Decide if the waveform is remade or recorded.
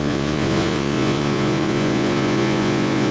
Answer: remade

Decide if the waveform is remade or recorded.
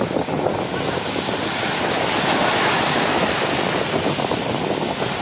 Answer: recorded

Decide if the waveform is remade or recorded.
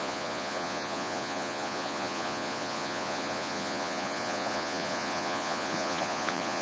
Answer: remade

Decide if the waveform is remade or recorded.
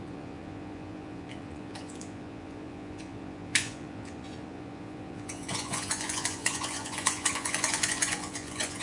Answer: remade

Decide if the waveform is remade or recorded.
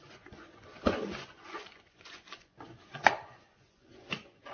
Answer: remade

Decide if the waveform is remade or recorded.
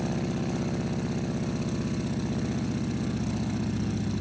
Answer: recorded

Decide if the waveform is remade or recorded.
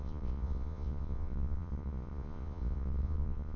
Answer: remade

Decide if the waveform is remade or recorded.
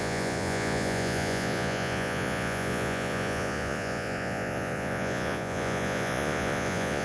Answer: remade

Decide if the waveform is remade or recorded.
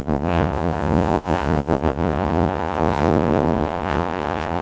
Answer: remade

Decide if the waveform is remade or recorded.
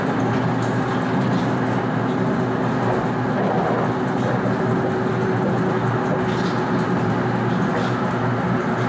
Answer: recorded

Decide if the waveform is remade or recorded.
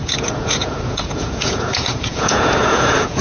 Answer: remade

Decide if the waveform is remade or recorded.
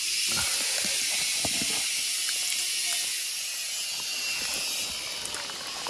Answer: recorded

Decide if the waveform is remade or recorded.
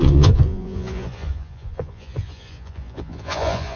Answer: remade